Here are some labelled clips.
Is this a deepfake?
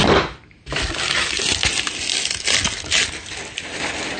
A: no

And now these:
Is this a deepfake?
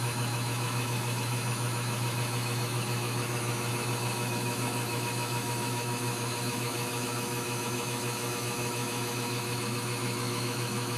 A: yes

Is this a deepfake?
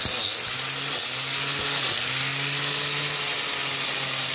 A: no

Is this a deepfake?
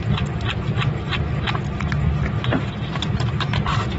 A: no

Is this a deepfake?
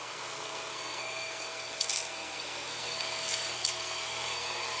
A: yes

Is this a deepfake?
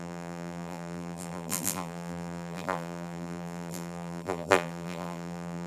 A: yes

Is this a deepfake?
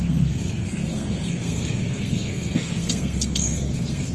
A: yes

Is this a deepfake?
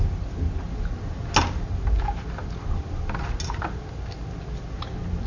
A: no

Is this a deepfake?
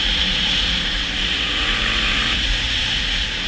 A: yes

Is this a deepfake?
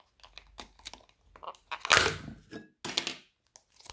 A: no